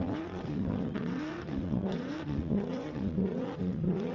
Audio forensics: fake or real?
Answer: fake